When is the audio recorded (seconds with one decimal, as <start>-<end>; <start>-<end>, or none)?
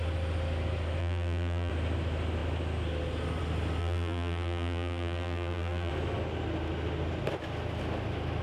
0.0-1.0; 1.7-3.8; 5.9-8.4